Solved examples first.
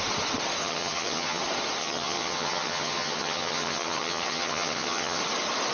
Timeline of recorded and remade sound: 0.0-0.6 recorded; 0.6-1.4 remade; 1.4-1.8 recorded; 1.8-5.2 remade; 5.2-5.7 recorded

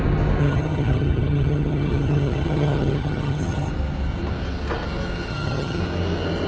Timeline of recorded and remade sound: 0.0-0.4 recorded; 0.4-3.7 remade; 3.7-5.3 recorded; 5.3-5.8 remade; 5.8-6.5 recorded